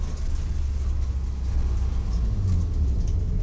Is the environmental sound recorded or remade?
recorded